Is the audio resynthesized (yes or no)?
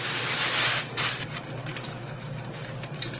no